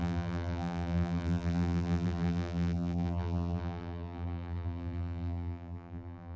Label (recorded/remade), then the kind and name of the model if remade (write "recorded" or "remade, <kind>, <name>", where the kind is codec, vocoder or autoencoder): remade, vocoder, BigVGAN v2